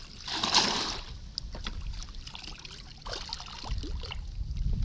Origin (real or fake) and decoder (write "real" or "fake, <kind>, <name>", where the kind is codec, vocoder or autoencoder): real